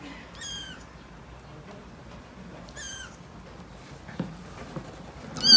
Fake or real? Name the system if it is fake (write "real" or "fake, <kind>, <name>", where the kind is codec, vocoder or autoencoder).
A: real